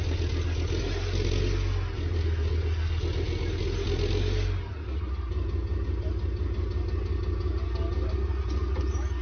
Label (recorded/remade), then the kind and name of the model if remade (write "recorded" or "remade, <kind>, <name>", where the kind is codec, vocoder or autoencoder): recorded